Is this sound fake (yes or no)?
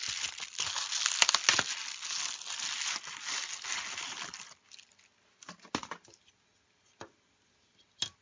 no